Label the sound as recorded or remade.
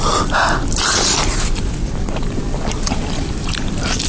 recorded